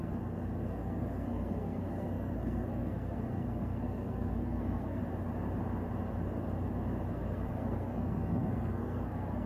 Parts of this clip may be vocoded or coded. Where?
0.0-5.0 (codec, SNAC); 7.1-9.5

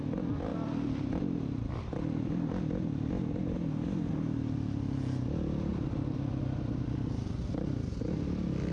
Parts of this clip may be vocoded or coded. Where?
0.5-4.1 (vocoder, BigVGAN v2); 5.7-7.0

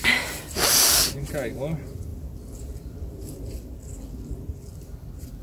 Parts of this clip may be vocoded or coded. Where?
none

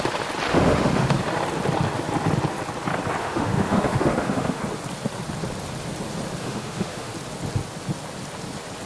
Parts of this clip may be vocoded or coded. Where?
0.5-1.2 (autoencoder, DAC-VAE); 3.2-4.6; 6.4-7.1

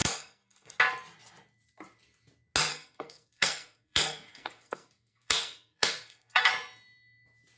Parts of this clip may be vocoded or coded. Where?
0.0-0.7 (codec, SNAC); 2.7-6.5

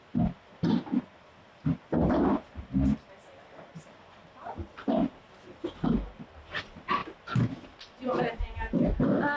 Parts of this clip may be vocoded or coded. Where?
none

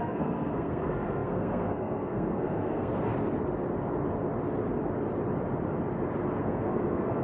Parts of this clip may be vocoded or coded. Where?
0.0-3.1 (codec, SNAC); 6.4-7.2

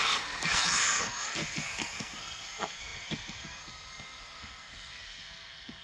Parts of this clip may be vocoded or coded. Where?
0.0-5.8 (codec, SNAC)